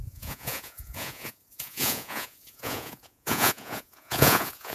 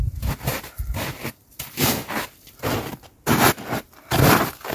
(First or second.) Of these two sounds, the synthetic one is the first